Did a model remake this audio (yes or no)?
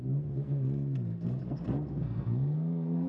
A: yes